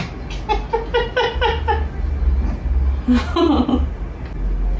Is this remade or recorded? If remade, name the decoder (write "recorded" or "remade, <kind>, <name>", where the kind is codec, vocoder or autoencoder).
recorded